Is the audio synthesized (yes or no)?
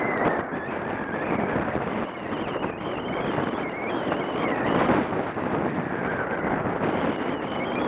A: no